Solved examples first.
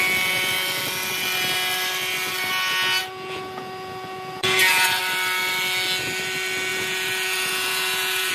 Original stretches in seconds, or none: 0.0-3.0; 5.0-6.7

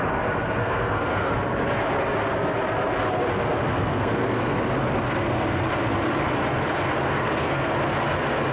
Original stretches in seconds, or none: 0.0-0.6; 1.3-3.6; 4.6-7.2; 7.7-8.5

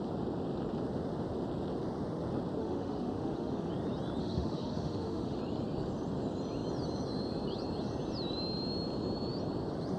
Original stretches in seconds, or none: 0.0-2.6; 3.7-4.2; 5.4-10.0

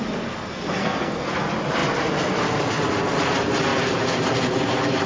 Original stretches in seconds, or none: 0.0-0.8; 1.3-5.1

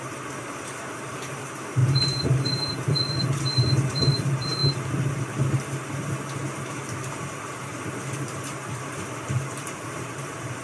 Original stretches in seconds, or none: 4.6-9.1

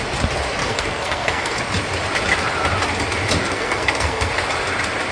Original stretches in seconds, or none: 0.0-0.6; 1.6-3.4; 4.3-5.1

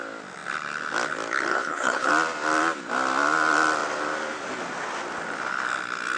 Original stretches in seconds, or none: 0.0-1.5; 2.1-6.2

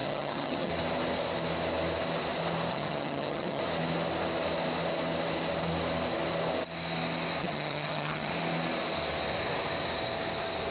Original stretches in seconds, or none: 0.7-2.7; 3.6-7.4; 8.3-10.7